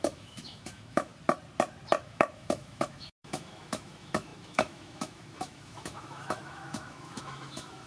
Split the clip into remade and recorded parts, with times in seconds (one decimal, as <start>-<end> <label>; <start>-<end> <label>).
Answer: 0.0-1.1 remade; 1.1-2.0 recorded; 2.0-7.9 remade